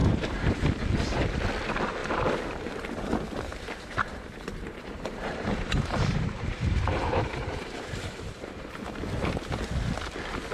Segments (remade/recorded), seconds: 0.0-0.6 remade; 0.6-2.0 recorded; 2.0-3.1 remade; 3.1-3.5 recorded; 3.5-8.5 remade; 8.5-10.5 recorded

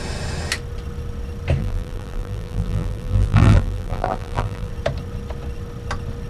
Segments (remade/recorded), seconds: 0.0-1.6 recorded; 1.6-4.7 remade; 4.7-6.3 recorded